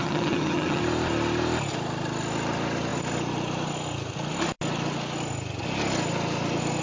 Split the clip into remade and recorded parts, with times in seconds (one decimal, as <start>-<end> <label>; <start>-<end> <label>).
0.0-0.8 remade; 0.8-6.8 recorded